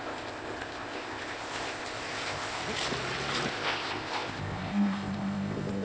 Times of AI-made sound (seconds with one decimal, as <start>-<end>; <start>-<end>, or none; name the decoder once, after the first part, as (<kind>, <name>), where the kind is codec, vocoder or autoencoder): 0.0-2.6 (codec, ZipCodec); 3.5-5.8